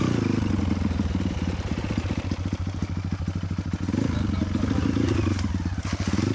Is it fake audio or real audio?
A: real